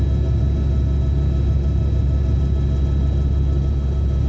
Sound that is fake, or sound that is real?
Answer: real